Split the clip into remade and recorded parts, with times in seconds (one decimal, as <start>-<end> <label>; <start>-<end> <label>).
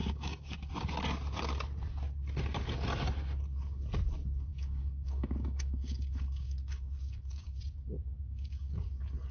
0.0-0.7 remade; 0.7-4.5 recorded; 4.5-7.6 remade; 7.6-8.1 recorded; 8.1-8.7 remade; 8.7-9.3 recorded